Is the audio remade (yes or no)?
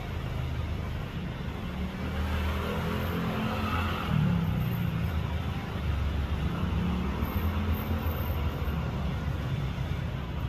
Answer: no